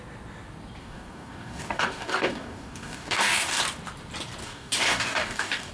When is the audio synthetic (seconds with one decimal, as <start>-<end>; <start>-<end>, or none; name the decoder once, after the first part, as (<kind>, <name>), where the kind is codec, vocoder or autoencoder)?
0.8-3.6 (codec, DAC); 4.4-5.7